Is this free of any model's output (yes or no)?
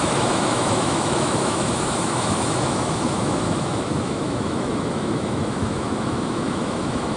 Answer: no